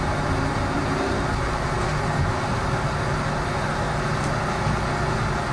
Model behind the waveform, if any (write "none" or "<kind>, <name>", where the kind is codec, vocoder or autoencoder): none